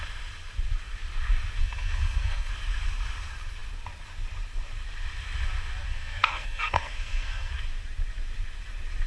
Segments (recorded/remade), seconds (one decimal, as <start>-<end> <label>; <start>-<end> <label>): 0.0-1.6 recorded; 1.6-2.5 remade; 2.5-5.8 recorded; 5.8-7.5 remade; 7.5-9.1 recorded